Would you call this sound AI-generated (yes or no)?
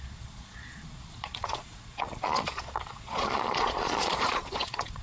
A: yes